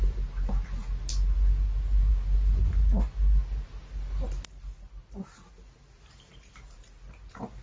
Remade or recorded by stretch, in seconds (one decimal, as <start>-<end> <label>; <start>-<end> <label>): 0.0-7.6 recorded